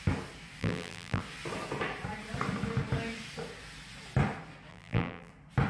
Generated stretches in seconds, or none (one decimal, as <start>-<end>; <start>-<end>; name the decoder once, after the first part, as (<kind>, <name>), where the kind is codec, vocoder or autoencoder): 0.6-1.2 (vocoder, BigVGAN v2); 4.7-5.3